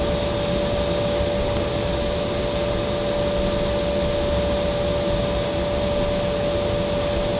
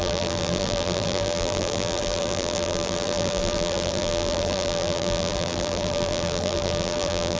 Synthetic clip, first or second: second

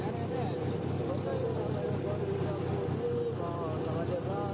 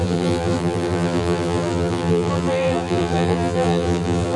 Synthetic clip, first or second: second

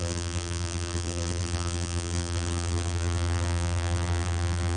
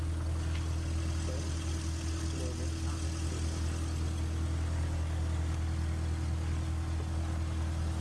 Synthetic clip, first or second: first